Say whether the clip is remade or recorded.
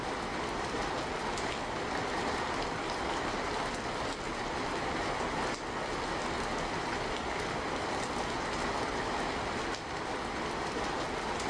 recorded